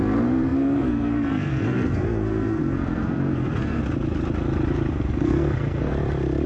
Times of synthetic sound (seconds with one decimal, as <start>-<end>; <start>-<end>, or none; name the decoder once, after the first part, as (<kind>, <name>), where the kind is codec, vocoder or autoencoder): 0.0-3.8 (codec, SNAC); 4.9-5.9